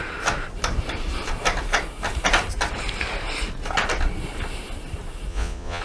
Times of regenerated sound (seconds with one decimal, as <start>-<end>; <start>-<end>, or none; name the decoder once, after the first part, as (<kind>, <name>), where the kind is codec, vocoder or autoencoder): 5.3-5.8 (vocoder, Vocos)

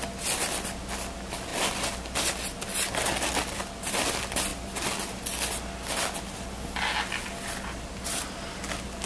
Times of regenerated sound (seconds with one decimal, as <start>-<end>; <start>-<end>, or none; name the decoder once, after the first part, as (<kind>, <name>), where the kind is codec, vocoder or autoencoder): none